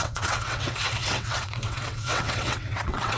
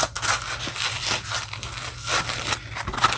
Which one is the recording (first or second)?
second